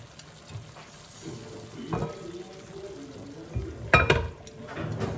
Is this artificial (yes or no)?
no